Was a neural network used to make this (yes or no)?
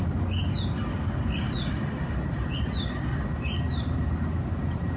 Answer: no